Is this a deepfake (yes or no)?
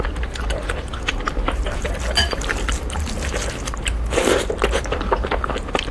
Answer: yes